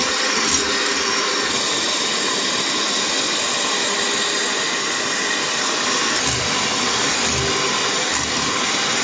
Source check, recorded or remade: recorded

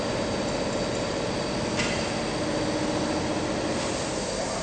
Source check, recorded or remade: recorded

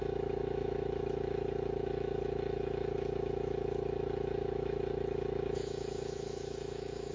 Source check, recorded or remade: remade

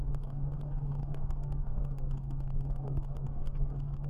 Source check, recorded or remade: remade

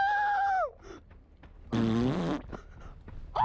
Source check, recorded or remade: recorded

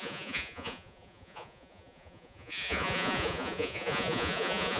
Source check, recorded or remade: remade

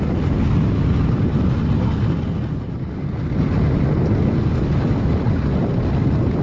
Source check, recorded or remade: recorded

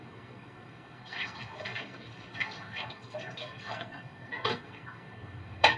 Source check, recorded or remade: remade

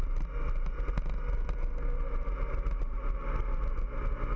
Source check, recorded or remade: recorded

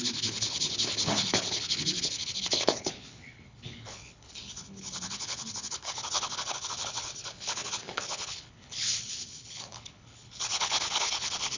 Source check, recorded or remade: remade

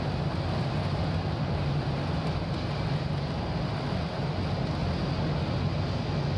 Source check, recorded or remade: recorded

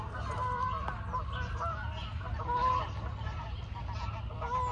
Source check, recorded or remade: recorded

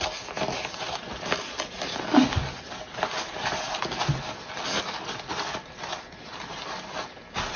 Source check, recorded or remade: recorded